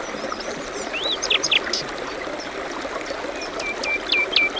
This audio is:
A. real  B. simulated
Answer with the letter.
A